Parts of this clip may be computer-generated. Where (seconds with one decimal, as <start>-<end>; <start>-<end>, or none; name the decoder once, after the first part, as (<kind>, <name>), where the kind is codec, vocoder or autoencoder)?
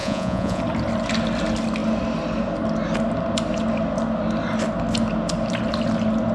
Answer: 0.0-0.6 (vocoder, Vocos)